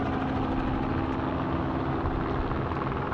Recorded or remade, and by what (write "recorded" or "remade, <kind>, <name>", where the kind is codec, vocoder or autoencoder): recorded